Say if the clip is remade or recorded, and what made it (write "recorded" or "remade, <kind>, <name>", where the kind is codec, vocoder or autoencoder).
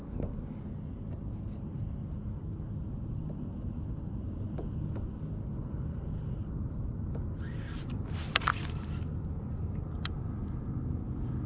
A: recorded